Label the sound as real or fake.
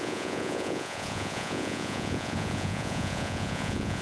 fake